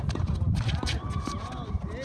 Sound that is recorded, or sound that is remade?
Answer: recorded